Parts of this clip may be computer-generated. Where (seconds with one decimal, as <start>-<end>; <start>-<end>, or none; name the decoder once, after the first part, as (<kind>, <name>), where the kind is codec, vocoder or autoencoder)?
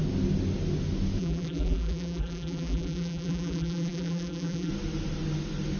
1.2-4.7 (vocoder, BigVGAN v2)